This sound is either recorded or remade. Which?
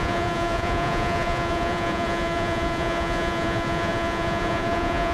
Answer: remade